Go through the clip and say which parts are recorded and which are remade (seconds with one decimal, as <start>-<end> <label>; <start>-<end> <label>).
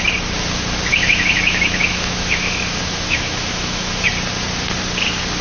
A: 0.0-0.9 recorded; 0.9-4.1 remade; 4.1-5.4 recorded